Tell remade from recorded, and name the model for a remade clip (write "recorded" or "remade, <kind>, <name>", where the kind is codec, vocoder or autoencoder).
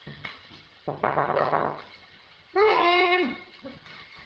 remade, vocoder, HiFi-GAN